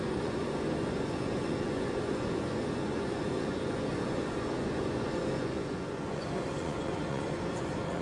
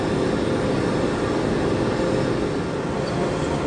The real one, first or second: second